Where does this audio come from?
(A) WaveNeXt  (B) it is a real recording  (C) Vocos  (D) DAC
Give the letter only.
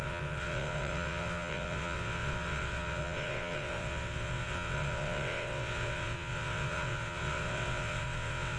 A